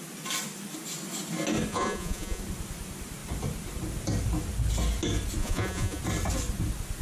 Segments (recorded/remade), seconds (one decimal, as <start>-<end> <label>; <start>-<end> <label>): 0.0-1.7 recorded; 1.7-2.4 remade; 2.4-5.4 recorded; 5.4-6.0 remade; 6.0-7.0 recorded